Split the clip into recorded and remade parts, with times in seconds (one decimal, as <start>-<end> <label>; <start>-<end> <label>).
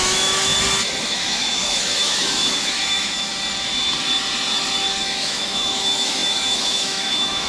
0.0-0.5 remade; 0.5-1.0 recorded; 1.0-3.3 remade; 3.3-5.0 recorded; 5.0-7.5 remade